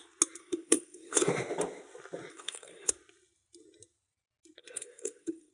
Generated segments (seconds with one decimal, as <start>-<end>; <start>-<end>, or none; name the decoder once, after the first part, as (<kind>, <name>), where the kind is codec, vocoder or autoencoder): 0.4-1.3 (codec, SNAC); 2.3-2.9; 4.6-5.5